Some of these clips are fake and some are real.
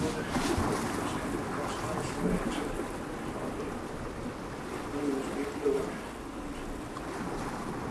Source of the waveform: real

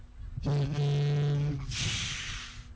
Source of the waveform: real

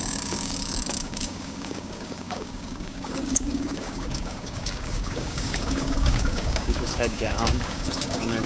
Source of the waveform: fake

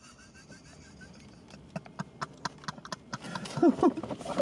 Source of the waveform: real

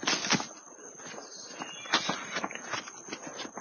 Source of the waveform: real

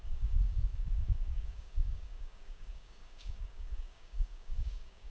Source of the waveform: fake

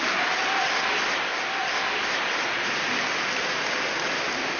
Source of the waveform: real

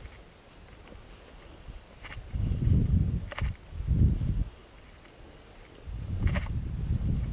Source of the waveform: real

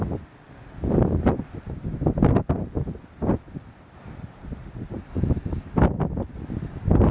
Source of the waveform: real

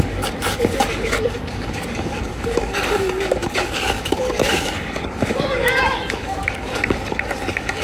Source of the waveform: fake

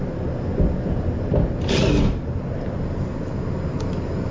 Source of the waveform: real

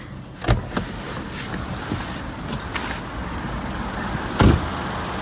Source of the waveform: real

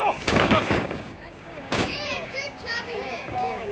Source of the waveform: fake